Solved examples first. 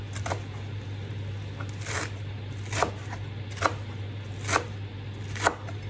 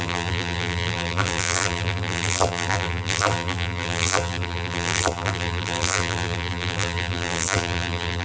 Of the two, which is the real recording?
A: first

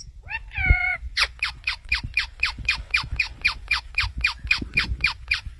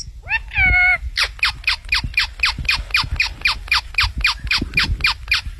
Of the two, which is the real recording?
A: second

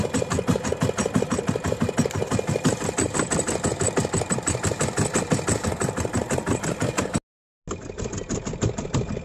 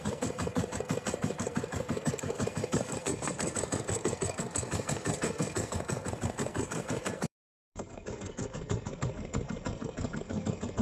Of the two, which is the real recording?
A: first